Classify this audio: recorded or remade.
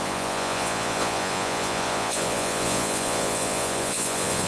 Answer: remade